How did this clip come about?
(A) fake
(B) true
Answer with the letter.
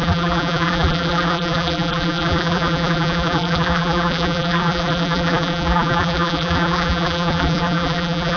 A